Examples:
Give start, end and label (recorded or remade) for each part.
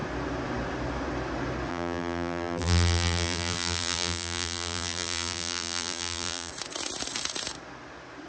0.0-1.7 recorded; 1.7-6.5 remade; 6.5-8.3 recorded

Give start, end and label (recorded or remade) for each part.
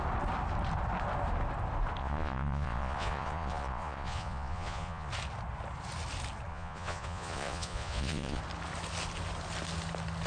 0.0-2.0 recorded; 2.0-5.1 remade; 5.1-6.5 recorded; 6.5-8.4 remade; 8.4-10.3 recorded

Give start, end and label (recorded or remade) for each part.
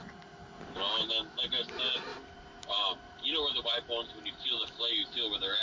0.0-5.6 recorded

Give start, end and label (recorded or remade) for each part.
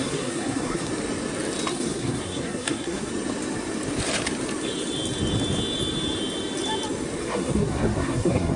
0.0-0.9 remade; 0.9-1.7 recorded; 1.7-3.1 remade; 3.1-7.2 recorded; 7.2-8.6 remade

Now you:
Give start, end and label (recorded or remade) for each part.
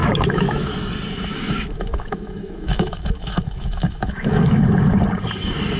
0.0-0.7 remade; 0.7-1.3 recorded; 1.3-4.6 remade; 4.6-5.8 recorded